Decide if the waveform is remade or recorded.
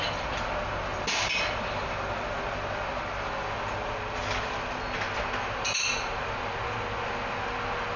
recorded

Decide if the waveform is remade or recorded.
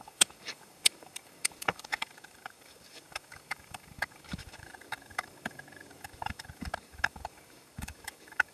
remade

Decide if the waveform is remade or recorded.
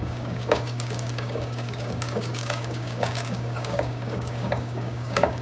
remade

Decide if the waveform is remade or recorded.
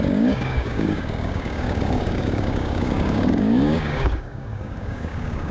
remade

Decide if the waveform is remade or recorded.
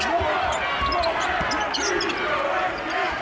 recorded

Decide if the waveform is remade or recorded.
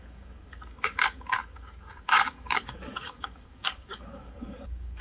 remade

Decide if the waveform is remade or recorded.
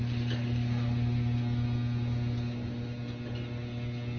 recorded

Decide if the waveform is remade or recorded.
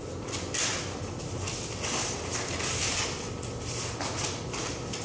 recorded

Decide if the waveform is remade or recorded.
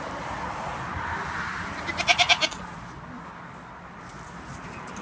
recorded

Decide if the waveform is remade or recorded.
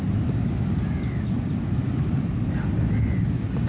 recorded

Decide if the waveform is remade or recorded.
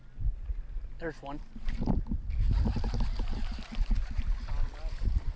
recorded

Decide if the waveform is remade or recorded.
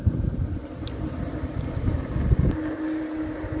recorded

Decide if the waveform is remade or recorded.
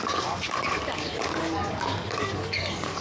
remade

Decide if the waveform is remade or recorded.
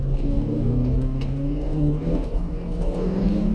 remade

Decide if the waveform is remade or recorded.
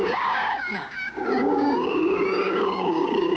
remade